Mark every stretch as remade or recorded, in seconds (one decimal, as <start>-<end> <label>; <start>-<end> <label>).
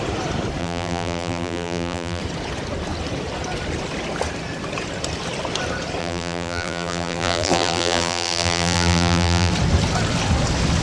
0.0-0.6 recorded; 0.6-2.2 remade; 2.2-6.0 recorded; 6.0-9.5 remade; 9.5-10.8 recorded